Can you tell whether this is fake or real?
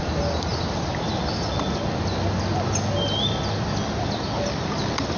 real